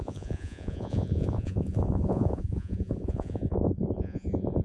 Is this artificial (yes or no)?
yes